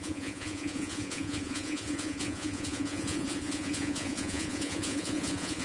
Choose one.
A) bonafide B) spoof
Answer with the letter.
B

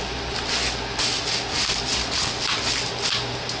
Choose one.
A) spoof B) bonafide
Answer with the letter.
B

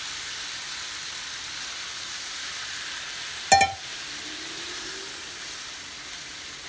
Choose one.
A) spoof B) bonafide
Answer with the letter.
B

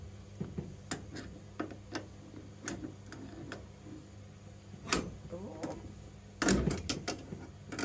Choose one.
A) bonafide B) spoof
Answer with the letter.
A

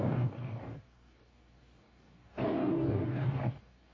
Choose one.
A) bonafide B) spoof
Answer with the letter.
B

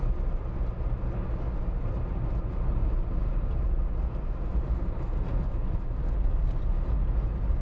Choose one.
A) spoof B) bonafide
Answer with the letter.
B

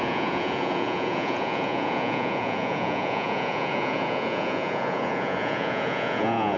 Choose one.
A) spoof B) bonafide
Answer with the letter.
A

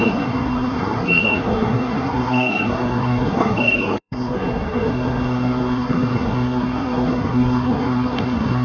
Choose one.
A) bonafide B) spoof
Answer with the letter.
B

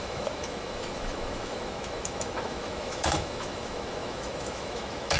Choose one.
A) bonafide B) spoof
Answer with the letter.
B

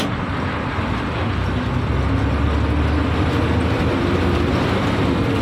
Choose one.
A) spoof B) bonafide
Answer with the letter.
B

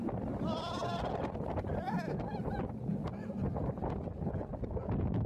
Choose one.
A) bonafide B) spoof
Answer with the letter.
A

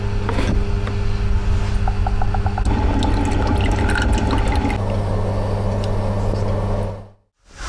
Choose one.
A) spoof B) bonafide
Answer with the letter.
B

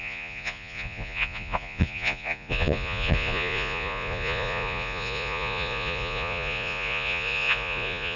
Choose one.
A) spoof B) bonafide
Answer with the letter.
A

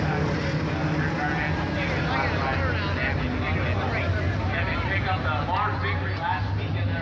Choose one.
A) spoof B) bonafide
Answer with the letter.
B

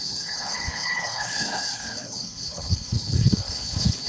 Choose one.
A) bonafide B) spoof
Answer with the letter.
B